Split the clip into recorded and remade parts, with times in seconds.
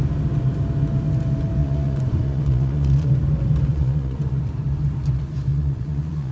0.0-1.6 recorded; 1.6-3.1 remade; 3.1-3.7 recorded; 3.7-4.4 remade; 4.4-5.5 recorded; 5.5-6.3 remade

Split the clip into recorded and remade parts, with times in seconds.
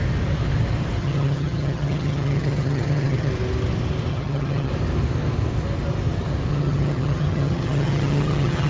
0.0-1.0 recorded; 1.0-3.3 remade; 3.3-4.1 recorded; 4.1-4.7 remade; 4.7-6.5 recorded; 6.5-8.7 remade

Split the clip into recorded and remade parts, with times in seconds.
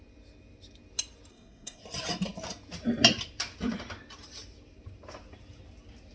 0.0-1.3 recorded; 1.3-1.8 remade; 1.8-6.1 recorded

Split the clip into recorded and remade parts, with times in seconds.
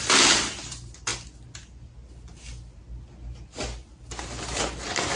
0.0-5.2 recorded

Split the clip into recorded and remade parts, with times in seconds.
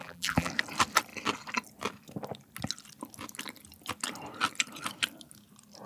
0.0-0.5 remade; 0.5-5.9 recorded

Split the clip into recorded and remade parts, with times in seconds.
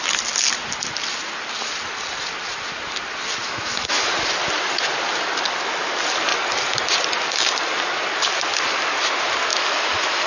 0.0-3.4 recorded; 3.4-4.1 remade; 4.1-9.5 recorded; 9.5-10.3 remade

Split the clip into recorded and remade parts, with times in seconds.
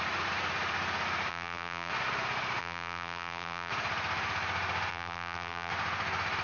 0.0-1.3 recorded; 1.3-1.9 remade; 1.9-2.6 recorded; 2.6-3.7 remade; 3.7-4.9 recorded; 4.9-5.7 remade; 5.7-6.4 recorded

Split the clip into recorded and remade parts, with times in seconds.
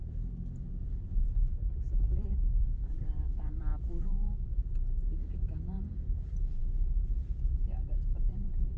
0.0-8.8 remade